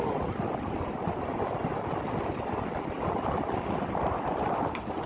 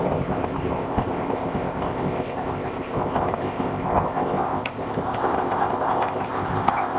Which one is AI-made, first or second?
second